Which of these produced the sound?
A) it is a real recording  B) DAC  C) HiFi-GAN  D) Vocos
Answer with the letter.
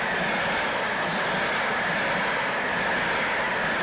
A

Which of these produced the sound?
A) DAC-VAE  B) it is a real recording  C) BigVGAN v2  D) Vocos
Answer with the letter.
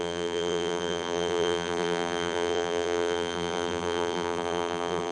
C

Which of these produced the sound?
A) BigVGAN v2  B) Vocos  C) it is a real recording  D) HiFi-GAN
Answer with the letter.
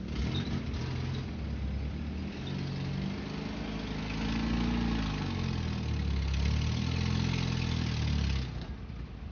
C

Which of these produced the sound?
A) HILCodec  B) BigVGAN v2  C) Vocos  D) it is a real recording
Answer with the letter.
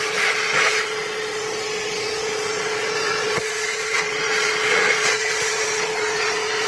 C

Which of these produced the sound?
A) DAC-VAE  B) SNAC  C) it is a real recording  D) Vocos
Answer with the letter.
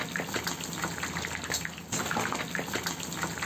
C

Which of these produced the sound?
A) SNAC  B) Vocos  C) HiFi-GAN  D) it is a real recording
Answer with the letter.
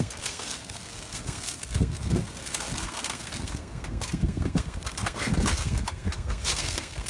A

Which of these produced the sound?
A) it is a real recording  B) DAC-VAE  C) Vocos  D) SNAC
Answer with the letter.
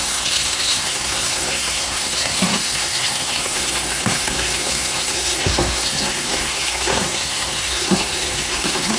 D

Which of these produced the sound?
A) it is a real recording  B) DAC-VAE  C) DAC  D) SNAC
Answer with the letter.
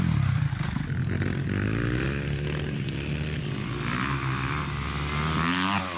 A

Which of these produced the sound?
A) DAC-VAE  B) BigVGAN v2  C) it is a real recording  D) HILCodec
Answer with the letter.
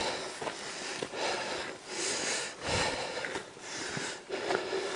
C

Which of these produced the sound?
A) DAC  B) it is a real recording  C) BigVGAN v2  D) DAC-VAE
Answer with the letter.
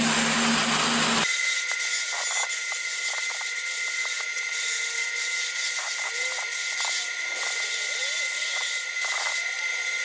B